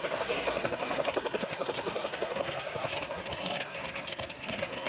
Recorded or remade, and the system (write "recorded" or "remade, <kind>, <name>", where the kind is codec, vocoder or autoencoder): remade, codec, SNAC